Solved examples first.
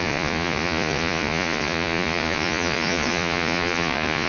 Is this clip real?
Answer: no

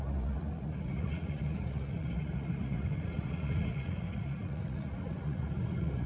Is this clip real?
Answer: no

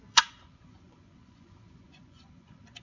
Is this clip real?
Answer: no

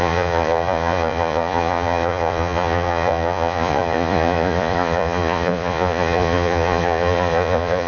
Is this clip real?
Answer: no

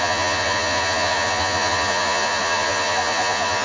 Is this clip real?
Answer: no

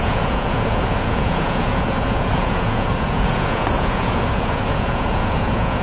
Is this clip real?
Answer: no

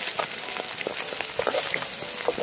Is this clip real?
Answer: yes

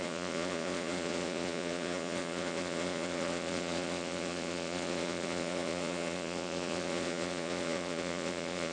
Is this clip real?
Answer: no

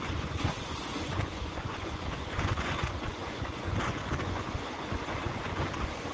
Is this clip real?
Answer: no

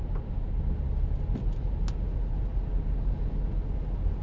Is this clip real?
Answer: yes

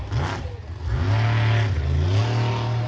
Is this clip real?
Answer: yes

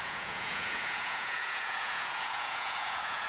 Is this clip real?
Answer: no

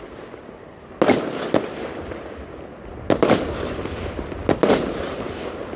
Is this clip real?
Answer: yes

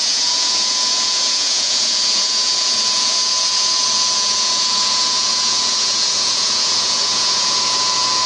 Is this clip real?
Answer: no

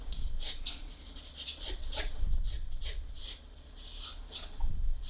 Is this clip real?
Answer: no